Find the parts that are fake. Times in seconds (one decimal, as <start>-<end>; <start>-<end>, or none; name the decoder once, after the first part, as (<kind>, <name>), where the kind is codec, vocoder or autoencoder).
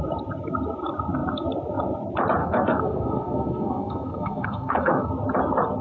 2.4-5.1 (codec, SNAC)